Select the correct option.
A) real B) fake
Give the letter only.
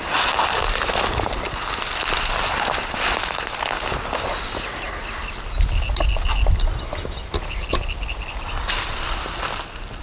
A